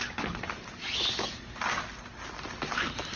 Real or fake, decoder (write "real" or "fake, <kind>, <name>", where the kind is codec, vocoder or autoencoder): real